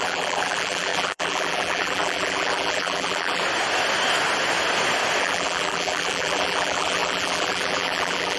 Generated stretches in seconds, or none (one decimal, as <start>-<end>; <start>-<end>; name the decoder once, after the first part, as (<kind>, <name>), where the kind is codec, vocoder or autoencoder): 0.0-3.4 (vocoder, BigVGAN v2); 5.2-8.4